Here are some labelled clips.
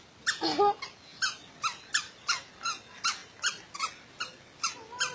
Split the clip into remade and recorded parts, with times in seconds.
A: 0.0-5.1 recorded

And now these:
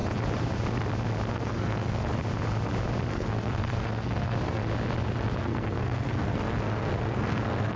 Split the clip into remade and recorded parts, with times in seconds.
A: 0.0-1.3 recorded; 1.3-2.1 remade; 2.1-3.1 recorded; 3.1-4.6 remade; 4.6-5.4 recorded; 5.4-7.8 remade

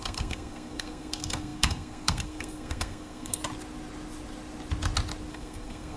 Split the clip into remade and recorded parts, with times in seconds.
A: 0.0-3.4 remade; 3.4-5.3 recorded; 5.3-6.0 remade

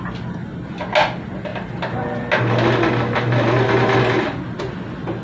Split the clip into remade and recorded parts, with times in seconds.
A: 0.0-5.2 recorded

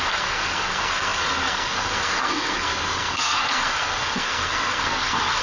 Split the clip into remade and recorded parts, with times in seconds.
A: 0.0-5.4 remade

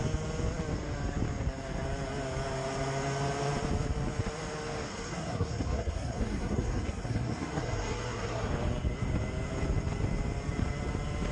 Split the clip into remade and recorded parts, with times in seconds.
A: 0.0-4.9 recorded; 4.9-8.5 remade; 8.5-11.3 recorded

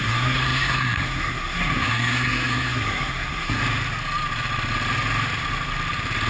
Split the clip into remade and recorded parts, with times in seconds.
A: 0.0-3.6 remade; 3.6-6.3 recorded